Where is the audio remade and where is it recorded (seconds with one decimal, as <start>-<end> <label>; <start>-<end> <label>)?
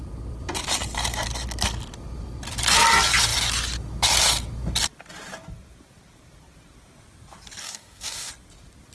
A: 0.0-7.6 recorded; 7.6-8.3 remade; 8.3-8.9 recorded